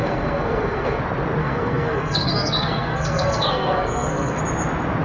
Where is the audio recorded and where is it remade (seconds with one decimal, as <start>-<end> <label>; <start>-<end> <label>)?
0.0-1.0 remade; 1.0-1.4 recorded; 1.4-4.4 remade; 4.4-5.0 recorded